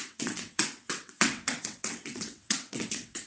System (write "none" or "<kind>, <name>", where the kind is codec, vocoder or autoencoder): vocoder, WaveNeXt